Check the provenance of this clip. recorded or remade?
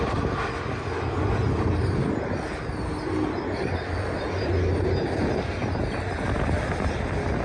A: recorded